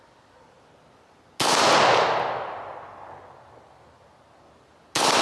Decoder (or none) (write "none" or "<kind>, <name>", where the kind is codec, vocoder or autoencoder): none